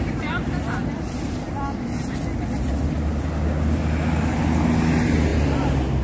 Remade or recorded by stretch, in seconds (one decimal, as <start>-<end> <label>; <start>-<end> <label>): 0.0-6.0 recorded

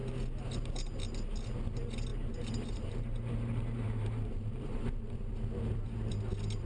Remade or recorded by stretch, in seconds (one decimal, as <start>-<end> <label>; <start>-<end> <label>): 0.0-2.1 recorded; 2.1-6.1 remade; 6.1-6.7 recorded

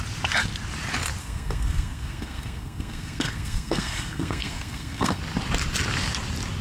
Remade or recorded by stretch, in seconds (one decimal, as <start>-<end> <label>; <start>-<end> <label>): 0.0-1.2 recorded; 1.2-5.2 remade; 5.2-6.6 recorded